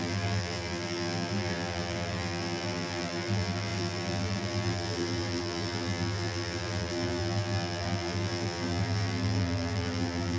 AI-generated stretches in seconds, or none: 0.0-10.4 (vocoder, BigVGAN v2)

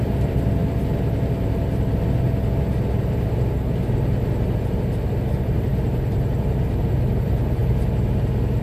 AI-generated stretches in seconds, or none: 0.0-0.6 (vocoder, BigVGAN v2); 5.3-5.7; 7.1-7.6